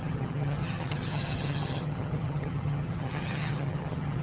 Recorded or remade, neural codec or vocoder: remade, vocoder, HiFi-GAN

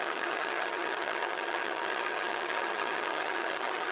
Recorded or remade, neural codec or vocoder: remade, vocoder, HiFi-GAN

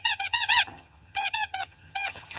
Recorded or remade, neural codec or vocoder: remade, vocoder, HiFi-GAN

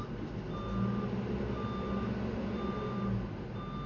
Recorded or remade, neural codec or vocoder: recorded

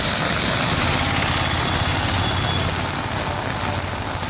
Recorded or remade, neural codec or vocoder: recorded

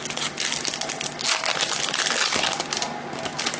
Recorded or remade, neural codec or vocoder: recorded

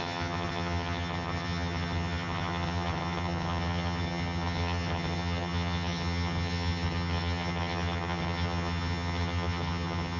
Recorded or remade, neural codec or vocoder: remade, vocoder, HiFi-GAN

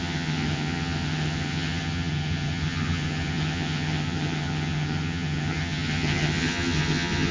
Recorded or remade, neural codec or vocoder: remade, vocoder, HiFi-GAN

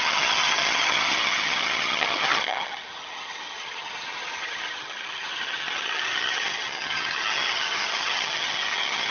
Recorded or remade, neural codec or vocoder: remade, vocoder, HiFi-GAN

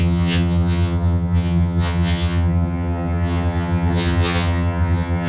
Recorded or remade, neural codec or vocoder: remade, vocoder, HiFi-GAN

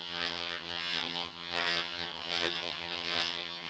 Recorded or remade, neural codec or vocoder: remade, vocoder, HiFi-GAN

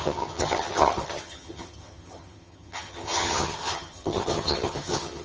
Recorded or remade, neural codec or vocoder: remade, vocoder, HiFi-GAN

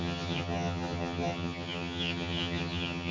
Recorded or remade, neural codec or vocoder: remade, vocoder, HiFi-GAN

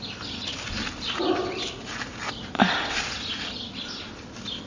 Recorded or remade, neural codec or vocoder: recorded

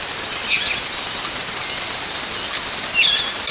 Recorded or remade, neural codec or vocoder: recorded